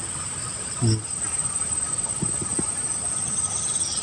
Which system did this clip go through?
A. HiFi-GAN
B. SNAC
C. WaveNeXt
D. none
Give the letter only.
D